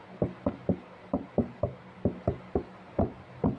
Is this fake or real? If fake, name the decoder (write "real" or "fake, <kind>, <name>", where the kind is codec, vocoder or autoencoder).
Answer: real